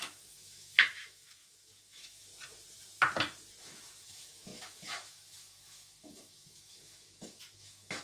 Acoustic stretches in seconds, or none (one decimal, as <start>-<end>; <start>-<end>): 2.3-3.6